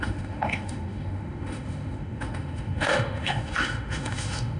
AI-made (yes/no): yes